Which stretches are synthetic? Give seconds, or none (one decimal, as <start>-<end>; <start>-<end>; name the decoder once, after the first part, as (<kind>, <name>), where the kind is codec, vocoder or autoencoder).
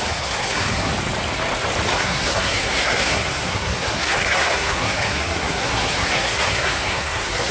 0.0-0.9 (codec, SNAC); 1.9-7.5